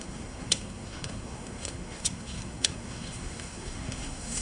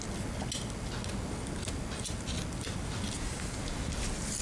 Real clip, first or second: second